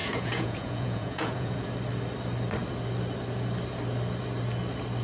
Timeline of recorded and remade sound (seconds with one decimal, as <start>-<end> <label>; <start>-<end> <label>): 0.0-1.7 remade; 1.7-5.0 recorded